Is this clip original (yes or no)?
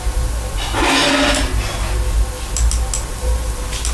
yes